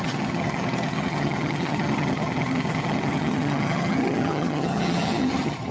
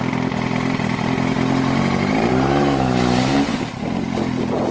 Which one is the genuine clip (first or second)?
second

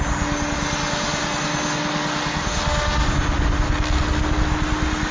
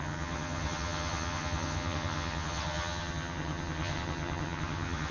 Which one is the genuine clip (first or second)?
first